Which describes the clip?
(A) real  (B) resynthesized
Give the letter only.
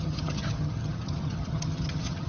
B